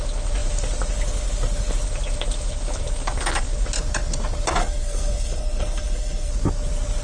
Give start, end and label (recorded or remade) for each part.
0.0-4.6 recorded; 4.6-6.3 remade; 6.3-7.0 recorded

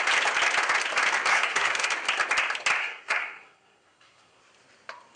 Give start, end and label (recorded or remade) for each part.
0.0-1.3 recorded; 1.3-1.9 remade; 1.9-2.8 recorded; 2.8-4.4 remade; 4.4-5.2 recorded

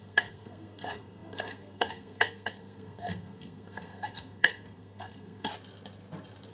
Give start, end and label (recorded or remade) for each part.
0.0-5.5 remade; 5.5-6.5 recorded

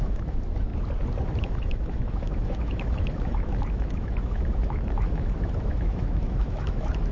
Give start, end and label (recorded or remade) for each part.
0.0-0.7 remade; 0.7-1.4 recorded; 1.4-7.1 remade

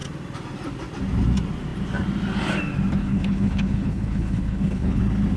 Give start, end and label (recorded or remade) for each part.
0.0-3.0 recorded; 3.0-5.0 remade; 5.0-5.4 recorded

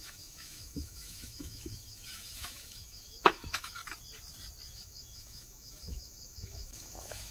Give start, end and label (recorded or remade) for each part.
0.0-3.8 remade; 3.8-4.7 recorded; 4.7-7.3 remade

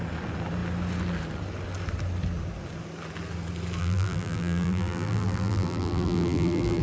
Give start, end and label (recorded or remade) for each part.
0.0-3.8 recorded; 3.8-6.8 remade